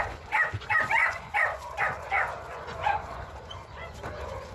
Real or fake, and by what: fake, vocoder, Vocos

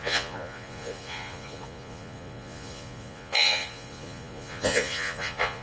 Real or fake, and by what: fake, vocoder, Vocos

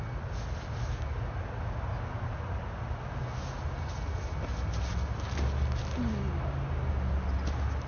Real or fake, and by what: real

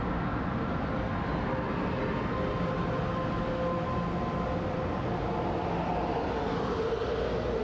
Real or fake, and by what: real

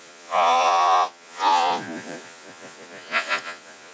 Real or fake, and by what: fake, vocoder, Vocos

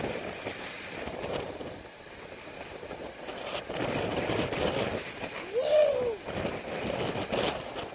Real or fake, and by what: real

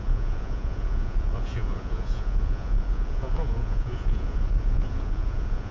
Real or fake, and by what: fake, vocoder, Vocos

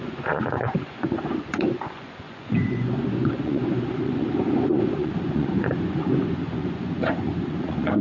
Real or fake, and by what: fake, vocoder, Vocos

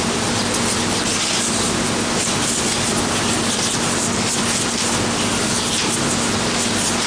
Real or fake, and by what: real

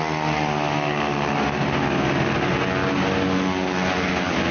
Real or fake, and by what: real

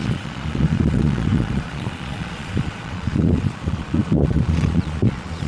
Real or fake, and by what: fake, vocoder, Vocos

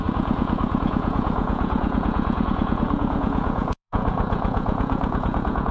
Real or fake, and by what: fake, vocoder, Vocos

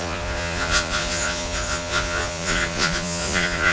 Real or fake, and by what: fake, vocoder, Vocos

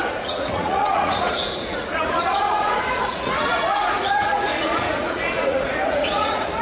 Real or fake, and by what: fake, vocoder, Vocos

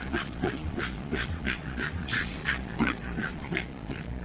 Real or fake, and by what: fake, vocoder, Vocos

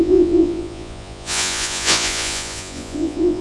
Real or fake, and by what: fake, vocoder, Vocos